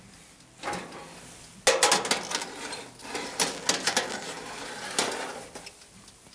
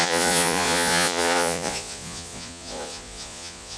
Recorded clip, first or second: first